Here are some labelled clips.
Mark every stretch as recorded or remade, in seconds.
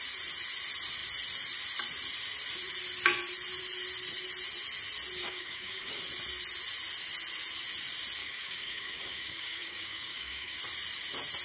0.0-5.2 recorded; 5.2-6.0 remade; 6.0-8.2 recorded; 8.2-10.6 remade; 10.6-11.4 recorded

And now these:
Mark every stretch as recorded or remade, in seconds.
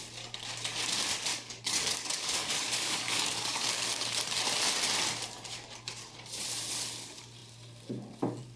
0.0-1.3 recorded; 1.3-4.2 remade; 4.2-8.6 recorded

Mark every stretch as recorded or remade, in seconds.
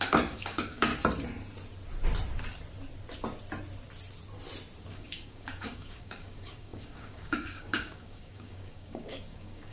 0.0-0.9 remade; 0.9-4.9 recorded; 4.9-9.7 remade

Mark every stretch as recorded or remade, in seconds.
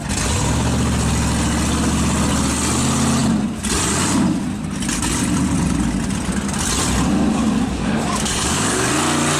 0.0-7.3 recorded; 7.3-8.9 remade; 8.9-9.4 recorded